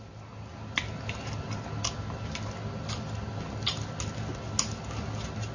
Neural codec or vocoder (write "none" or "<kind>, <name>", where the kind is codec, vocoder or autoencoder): none